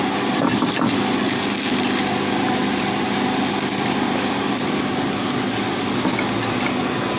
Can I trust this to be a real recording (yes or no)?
yes